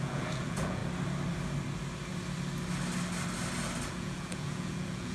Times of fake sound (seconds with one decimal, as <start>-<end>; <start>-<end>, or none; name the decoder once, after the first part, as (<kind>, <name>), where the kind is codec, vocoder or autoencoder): 0.0-0.8 (vocoder, Vocos); 3.9-5.1